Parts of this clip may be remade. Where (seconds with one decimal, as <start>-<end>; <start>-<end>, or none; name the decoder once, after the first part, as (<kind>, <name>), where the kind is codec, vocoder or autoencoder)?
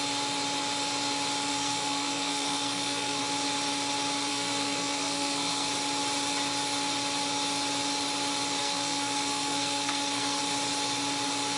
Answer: 1.5-3.2 (codec, SNAC); 4.3-5.7; 8.6-10.4